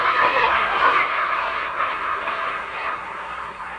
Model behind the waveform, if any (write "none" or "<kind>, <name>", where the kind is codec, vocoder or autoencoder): codec, SNAC